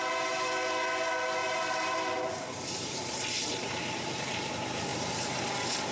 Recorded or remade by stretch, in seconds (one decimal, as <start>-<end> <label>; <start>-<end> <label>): 0.0-1.4 recorded; 1.4-4.5 remade; 4.5-4.9 recorded; 4.9-5.4 remade; 5.4-5.9 recorded